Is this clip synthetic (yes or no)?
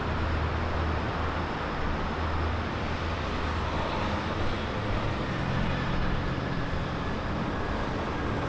no